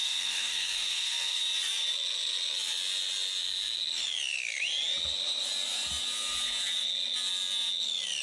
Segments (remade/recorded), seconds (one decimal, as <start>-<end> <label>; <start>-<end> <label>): 0.0-1.4 remade; 1.4-8.2 recorded